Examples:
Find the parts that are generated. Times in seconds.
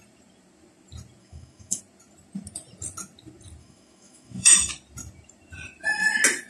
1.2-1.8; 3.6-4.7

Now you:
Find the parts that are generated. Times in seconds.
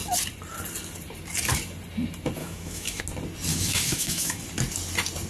2.4-3.0; 3.5-4.4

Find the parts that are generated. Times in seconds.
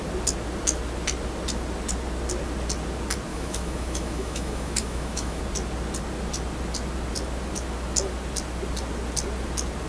3.3-5.4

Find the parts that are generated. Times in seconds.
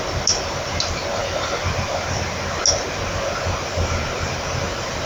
none